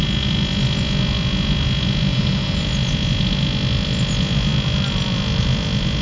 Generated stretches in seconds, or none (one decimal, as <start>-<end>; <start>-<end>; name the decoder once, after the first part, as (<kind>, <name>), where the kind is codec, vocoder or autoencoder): 2.1-2.6 (vocoder, BigVGAN v2)